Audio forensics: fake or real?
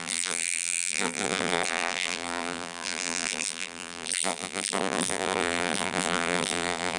fake